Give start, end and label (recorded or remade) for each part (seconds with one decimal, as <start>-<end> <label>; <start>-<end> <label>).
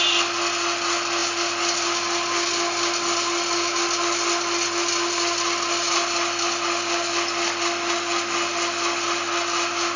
0.0-10.0 recorded